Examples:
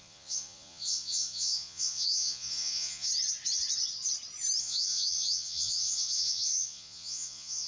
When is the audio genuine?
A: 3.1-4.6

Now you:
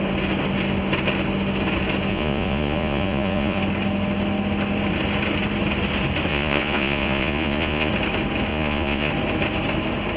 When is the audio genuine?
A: 0.0-2.1; 3.6-6.3; 7.9-8.5; 9.1-10.2